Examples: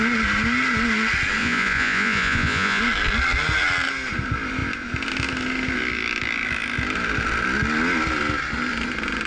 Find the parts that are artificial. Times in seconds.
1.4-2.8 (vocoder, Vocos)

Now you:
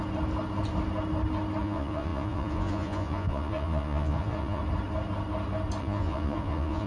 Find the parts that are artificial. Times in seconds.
1.6-4.6 (vocoder, Vocos); 5.8-6.9

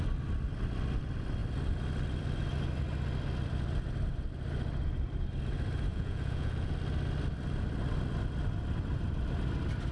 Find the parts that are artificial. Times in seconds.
5.9-6.7 (vocoder, Vocos)

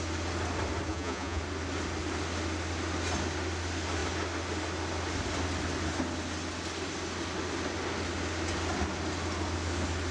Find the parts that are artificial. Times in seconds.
0.9-1.4 (vocoder, Vocos)

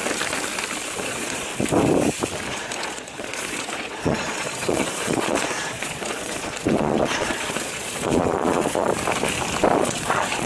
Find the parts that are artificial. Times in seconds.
1.0-1.5 (vocoder, Vocos); 2.5-8.9; 9.8-10.5

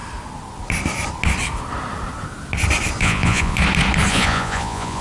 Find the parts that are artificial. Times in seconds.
3.0-3.6 (vocoder, Vocos); 4.1-5.0

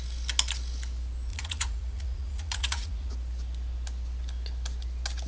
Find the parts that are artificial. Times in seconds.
1.3-3.1 (vocoder, Vocos)